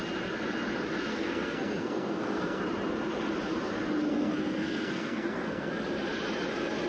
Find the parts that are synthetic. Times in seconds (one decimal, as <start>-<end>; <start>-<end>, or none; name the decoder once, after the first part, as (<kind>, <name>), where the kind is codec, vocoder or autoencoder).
1.1-2.6 (codec, SNAC); 4.1-5.7